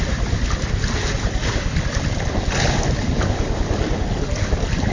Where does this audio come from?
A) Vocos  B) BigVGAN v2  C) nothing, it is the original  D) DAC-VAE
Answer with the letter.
C